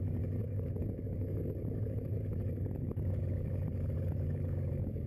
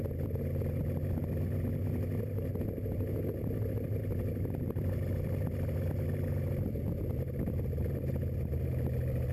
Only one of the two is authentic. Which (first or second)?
second